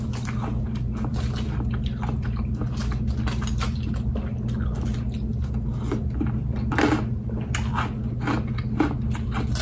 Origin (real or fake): real